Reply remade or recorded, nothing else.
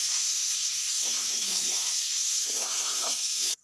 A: remade